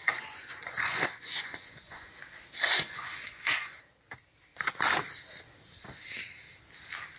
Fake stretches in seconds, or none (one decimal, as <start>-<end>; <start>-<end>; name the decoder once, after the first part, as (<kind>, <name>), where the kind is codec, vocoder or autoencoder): 0.0-2.1 (vocoder, Vocos); 2.6-3.8